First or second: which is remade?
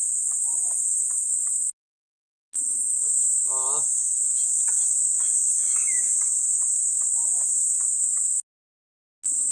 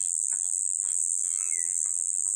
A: second